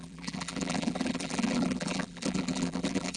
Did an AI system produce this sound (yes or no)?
yes